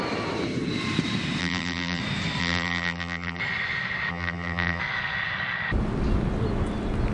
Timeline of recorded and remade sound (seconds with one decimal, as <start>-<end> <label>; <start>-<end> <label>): 0.0-1.4 recorded; 1.4-2.0 remade; 2.0-2.4 recorded; 2.4-3.4 remade; 3.4-4.1 recorded; 4.1-4.8 remade; 4.8-7.1 recorded

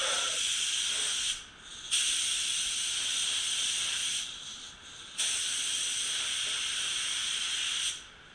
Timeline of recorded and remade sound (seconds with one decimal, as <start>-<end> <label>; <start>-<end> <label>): 0.0-8.3 recorded

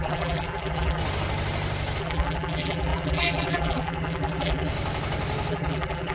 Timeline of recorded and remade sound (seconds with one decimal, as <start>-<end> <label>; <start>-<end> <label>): 0.0-1.0 remade; 1.0-2.0 recorded; 2.0-4.7 remade; 4.7-5.5 recorded; 5.5-6.1 remade

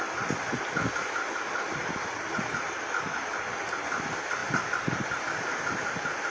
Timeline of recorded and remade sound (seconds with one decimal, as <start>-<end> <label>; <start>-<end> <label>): 0.0-6.3 recorded

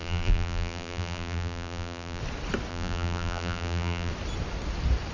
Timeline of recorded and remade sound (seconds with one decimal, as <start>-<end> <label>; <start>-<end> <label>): 0.0-2.2 remade; 2.2-2.7 recorded; 2.7-4.1 remade; 4.1-5.1 recorded